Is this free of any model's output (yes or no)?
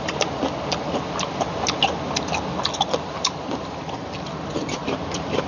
yes